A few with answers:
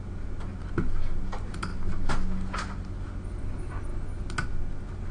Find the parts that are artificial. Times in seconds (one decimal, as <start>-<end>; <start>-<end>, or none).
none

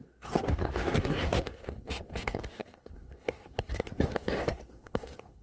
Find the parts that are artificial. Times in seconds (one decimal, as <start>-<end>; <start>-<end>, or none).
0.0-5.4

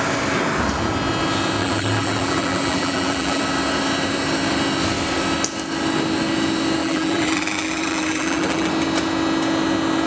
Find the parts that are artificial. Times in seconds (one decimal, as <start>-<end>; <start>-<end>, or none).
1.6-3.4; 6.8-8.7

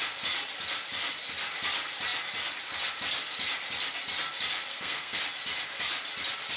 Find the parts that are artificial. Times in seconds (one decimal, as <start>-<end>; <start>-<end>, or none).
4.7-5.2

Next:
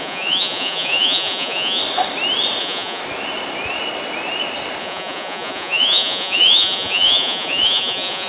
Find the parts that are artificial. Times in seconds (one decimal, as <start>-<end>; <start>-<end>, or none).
0.0-1.8; 2.6-3.0; 4.8-8.3

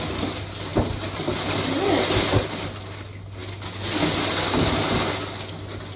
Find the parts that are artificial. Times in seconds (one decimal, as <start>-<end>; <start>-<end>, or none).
none

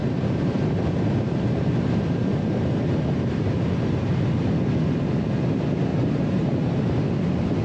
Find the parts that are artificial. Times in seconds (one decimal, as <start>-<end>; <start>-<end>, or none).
0.0-3.5; 5.9-6.8

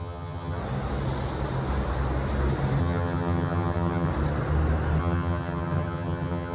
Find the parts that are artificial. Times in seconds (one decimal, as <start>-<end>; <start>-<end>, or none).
0.0-0.6; 2.8-4.1; 5.0-6.5